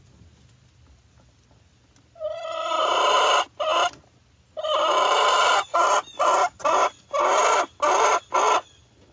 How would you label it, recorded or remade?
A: recorded